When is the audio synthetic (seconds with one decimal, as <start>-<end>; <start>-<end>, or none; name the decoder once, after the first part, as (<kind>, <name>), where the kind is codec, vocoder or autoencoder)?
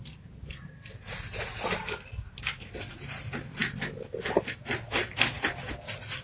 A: none